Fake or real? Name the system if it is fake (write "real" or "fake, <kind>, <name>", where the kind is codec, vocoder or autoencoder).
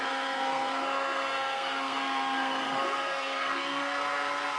fake, codec, SNAC